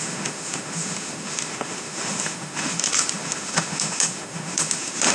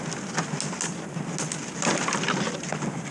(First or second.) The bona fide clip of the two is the second